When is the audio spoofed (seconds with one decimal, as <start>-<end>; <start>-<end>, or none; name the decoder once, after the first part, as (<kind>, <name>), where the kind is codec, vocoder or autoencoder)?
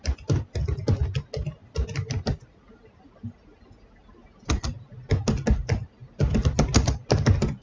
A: none